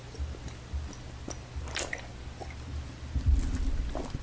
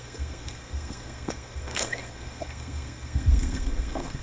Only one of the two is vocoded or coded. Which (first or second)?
second